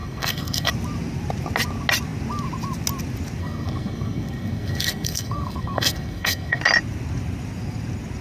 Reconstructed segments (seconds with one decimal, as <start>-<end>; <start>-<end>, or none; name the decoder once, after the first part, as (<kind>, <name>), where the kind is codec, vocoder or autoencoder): 0.0-0.7 (codec, SNAC); 3.4-6.6